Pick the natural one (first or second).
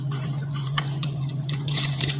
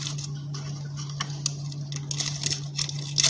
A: second